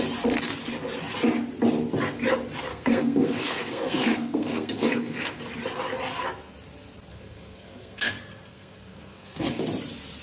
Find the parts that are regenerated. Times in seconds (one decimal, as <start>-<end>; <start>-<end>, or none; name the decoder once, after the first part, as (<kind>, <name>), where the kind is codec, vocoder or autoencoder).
2.7-5.4 (codec, SNAC); 7.1-8.1; 8.5-9.6